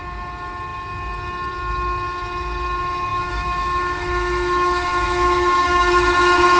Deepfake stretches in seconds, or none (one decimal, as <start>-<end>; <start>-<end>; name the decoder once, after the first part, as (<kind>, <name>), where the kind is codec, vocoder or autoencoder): 3.1-6.6 (autoencoder, DAC-VAE)